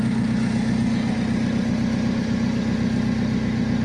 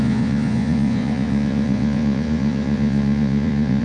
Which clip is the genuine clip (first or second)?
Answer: first